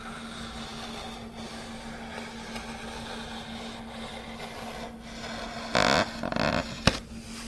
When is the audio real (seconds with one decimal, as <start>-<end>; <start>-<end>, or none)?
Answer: 0.0-7.5